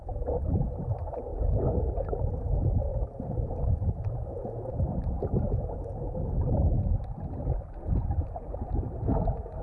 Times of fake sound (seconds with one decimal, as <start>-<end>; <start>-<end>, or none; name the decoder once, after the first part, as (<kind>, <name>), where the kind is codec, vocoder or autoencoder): 0.0-1.3 (vocoder, BigVGAN v2); 2.1-2.9; 4.7-5.9; 6.5-9.6